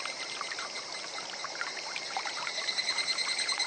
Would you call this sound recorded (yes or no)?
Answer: no